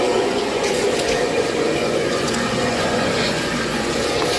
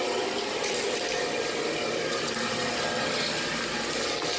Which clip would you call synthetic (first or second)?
first